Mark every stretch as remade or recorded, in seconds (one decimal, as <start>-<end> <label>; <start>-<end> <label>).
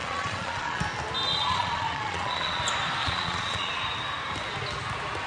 0.0-0.8 remade; 0.8-1.3 recorded; 1.3-2.6 remade; 2.6-3.0 recorded; 3.0-3.7 remade; 3.7-5.3 recorded